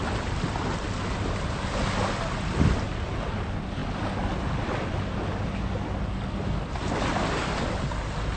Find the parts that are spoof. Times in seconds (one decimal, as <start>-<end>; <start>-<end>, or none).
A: none